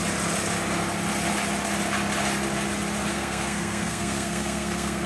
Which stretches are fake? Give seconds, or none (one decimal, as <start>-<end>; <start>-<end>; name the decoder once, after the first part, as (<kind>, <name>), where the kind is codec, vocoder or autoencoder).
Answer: 3.1-5.1 (codec, SNAC)